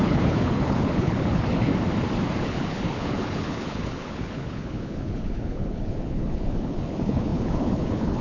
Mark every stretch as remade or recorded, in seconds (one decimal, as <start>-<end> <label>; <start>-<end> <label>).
0.0-1.7 remade; 1.7-2.4 recorded; 2.4-8.2 remade